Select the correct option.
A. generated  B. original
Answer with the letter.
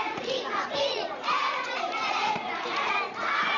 A